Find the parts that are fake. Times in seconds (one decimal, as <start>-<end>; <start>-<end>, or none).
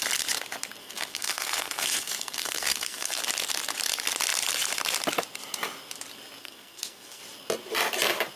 0.8-3.2; 6.4-7.2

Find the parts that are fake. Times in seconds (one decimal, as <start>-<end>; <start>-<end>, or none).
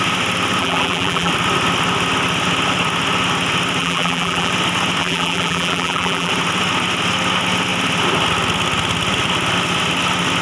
0.6-1.3; 3.8-4.5; 5.0-6.3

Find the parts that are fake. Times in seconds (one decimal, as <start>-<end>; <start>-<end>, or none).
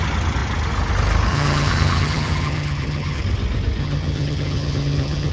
1.3-3.2; 3.8-5.3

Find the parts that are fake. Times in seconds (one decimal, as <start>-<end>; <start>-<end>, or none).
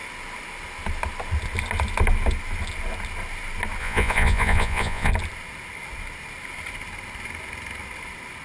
3.8-5.1